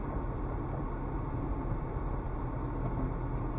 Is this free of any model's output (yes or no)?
yes